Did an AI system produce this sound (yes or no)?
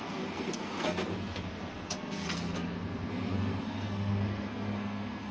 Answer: yes